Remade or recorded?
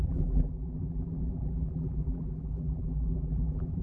remade